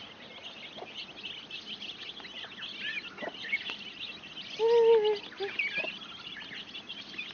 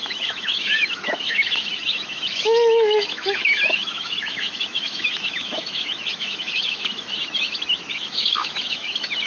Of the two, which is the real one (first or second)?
first